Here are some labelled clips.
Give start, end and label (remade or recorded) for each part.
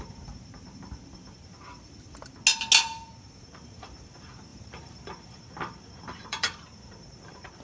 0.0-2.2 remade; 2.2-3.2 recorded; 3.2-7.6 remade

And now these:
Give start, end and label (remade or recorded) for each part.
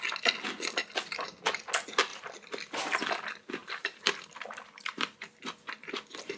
0.0-0.8 recorded; 0.8-1.4 remade; 1.4-2.1 recorded; 2.1-2.8 remade; 2.8-3.6 recorded; 3.6-5.9 remade; 5.9-6.4 recorded